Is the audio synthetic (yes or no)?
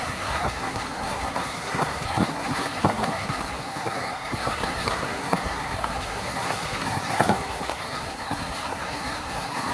yes